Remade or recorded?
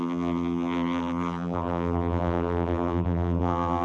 remade